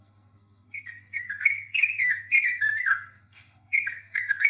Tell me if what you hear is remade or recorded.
remade